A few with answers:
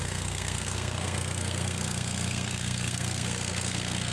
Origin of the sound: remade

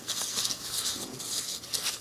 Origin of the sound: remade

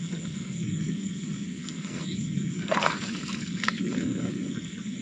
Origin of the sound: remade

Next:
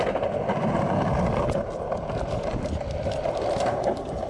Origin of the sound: recorded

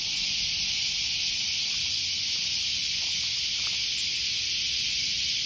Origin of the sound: recorded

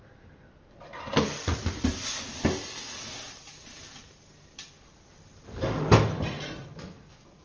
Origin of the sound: recorded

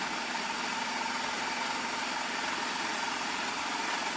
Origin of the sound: recorded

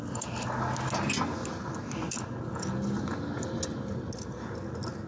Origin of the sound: recorded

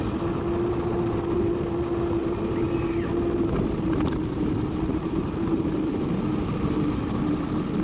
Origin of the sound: recorded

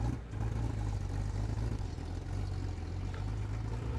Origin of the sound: recorded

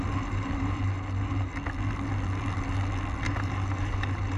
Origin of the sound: recorded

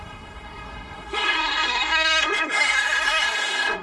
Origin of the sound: remade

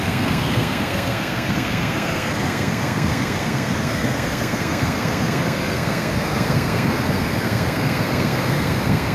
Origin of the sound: remade